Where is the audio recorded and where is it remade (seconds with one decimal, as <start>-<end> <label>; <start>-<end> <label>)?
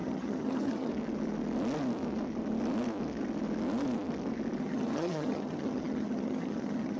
0.0-0.9 remade; 0.9-4.6 recorded; 4.6-7.0 remade